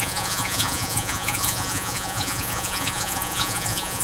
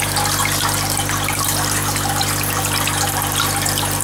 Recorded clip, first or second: second